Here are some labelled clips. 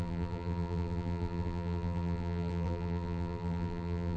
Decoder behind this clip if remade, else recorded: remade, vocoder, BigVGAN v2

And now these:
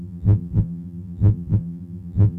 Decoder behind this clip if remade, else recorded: remade, vocoder, BigVGAN v2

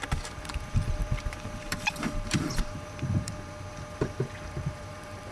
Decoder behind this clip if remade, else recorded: remade, vocoder, BigVGAN v2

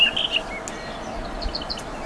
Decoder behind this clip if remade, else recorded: recorded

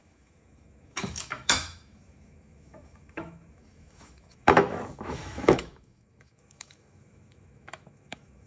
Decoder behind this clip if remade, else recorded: remade, autoencoder, DAC-VAE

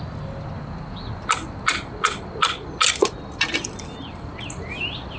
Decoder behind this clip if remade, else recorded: recorded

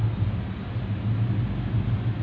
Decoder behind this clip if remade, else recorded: recorded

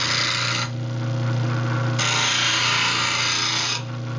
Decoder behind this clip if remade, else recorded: recorded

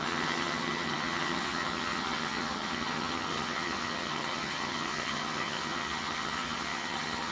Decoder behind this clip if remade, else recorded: remade, vocoder, HiFi-GAN